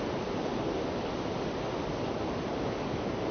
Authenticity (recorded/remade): recorded